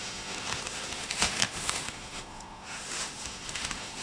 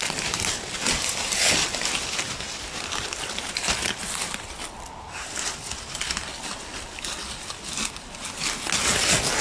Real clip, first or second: second